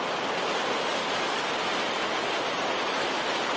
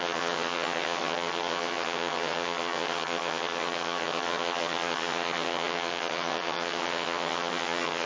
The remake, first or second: second